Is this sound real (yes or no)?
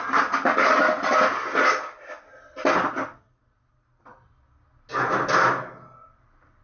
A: yes